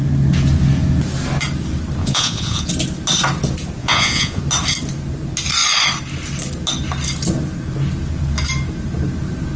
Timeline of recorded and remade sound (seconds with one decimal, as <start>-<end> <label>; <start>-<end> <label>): 0.0-2.0 recorded; 2.0-2.7 remade; 2.7-3.8 recorded; 3.8-4.4 remade; 4.4-9.6 recorded